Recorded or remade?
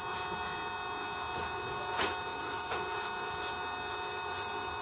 recorded